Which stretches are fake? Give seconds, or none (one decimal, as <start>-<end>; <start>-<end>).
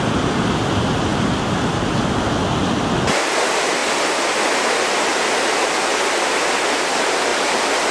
none